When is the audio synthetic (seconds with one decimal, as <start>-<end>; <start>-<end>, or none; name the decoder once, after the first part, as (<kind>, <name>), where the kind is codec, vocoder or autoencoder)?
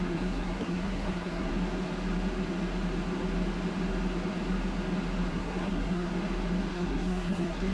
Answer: 0.0-1.5 (codec, SNAC); 5.3-6.1; 6.7-7.7